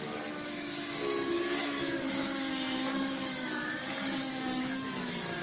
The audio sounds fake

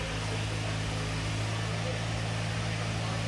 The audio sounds real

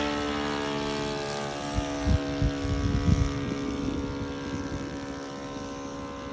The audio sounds real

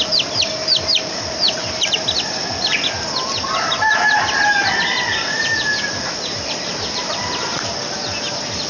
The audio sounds real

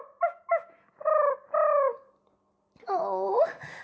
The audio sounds real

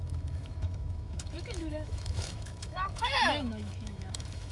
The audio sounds fake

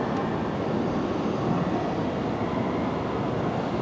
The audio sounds real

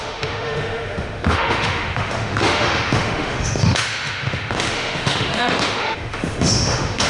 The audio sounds fake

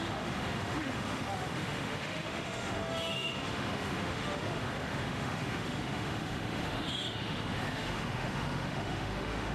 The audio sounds fake